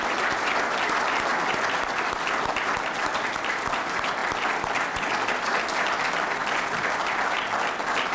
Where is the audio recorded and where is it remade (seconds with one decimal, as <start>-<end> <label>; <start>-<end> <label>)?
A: 0.0-8.1 recorded